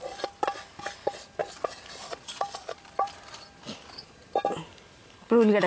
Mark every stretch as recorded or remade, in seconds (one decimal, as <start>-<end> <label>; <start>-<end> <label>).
0.0-1.4 recorded; 1.4-3.2 remade; 3.2-5.7 recorded